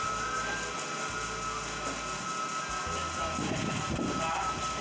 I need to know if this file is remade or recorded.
recorded